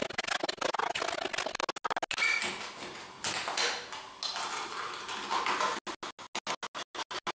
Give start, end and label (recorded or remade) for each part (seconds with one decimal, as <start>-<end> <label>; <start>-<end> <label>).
0.0-7.4 recorded